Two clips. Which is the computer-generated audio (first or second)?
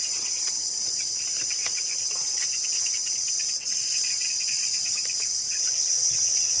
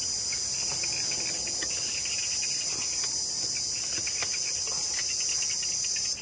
first